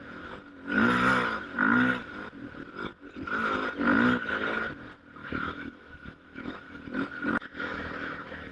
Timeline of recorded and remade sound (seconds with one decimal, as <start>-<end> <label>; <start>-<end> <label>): 0.0-5.2 recorded; 5.2-6.8 remade; 6.8-7.5 recorded; 7.5-8.5 remade